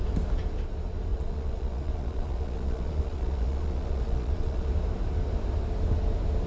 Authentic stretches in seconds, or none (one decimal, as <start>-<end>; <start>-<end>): 0.0-1.1; 4.7-6.5